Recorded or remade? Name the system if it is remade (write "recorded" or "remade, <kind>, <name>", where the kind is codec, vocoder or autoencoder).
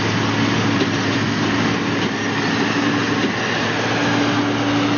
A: recorded